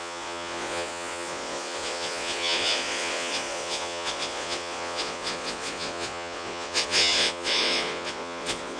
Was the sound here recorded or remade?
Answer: remade